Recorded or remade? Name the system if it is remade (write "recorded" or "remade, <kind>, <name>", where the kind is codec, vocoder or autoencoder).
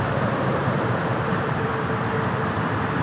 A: remade, vocoder, BigVGAN v2